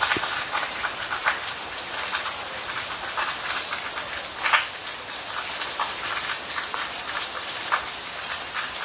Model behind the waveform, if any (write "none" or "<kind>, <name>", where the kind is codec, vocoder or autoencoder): none